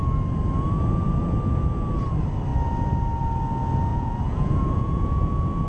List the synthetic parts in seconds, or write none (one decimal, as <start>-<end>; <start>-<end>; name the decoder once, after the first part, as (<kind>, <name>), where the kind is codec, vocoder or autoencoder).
3.9-5.7 (vocoder, Vocos)